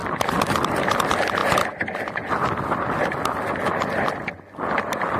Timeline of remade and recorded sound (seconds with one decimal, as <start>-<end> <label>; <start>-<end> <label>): 0.0-0.8 remade; 0.8-5.2 recorded